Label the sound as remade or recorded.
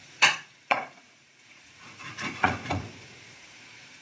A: remade